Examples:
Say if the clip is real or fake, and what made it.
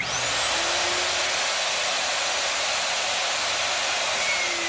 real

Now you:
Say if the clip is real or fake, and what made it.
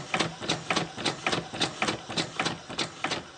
real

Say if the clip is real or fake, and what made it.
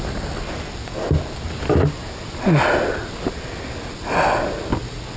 real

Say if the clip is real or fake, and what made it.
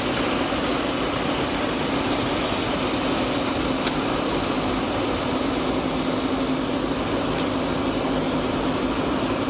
real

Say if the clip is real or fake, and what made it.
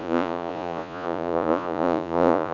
fake, vocoder, Vocos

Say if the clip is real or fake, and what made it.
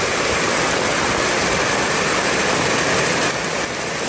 real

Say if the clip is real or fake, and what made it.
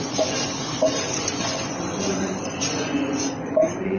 fake, vocoder, Vocos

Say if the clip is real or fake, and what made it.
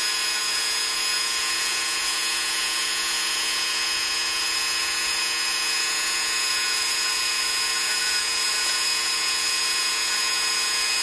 fake, vocoder, Vocos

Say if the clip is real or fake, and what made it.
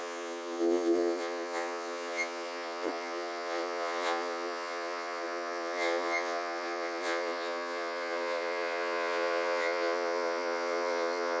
fake, vocoder, Vocos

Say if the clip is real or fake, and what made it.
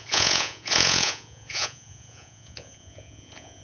fake, vocoder, Vocos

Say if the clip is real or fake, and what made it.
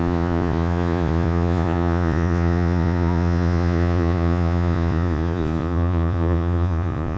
fake, vocoder, Vocos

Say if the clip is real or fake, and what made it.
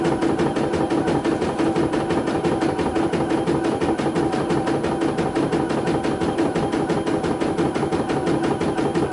real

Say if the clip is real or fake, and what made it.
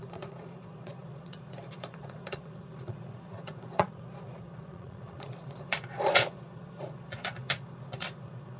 fake, vocoder, Vocos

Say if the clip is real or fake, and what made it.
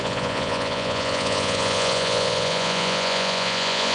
fake, vocoder, Vocos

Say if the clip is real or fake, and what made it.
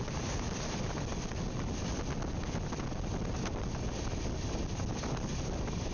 real